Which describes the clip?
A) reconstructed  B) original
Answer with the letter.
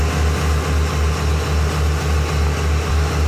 B